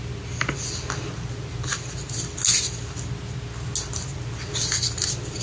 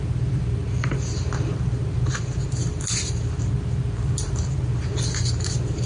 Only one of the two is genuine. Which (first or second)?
first